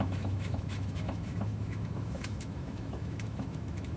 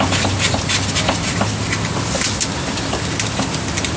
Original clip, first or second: second